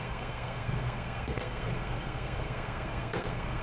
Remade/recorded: remade